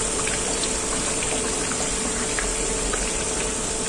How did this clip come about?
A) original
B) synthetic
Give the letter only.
A